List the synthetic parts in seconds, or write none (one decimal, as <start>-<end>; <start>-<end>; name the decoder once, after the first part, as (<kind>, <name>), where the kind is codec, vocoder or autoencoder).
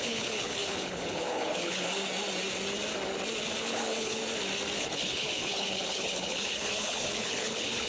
0.0-2.0 (codec, HILCodec); 3.6-4.2; 4.8-7.9